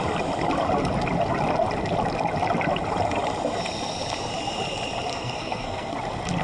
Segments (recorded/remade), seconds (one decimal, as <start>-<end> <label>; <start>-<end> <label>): 0.0-5.1 recorded; 5.1-5.9 remade; 5.9-6.4 recorded